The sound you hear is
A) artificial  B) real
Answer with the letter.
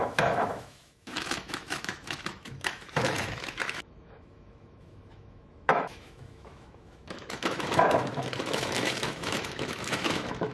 A